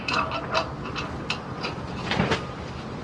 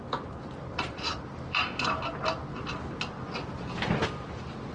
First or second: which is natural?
second